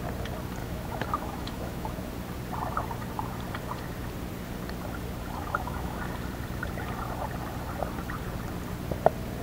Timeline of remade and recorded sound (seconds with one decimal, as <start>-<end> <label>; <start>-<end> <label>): 0.0-0.6 recorded; 0.6-2.0 remade; 2.0-5.4 recorded; 5.4-6.0 remade; 6.0-9.4 recorded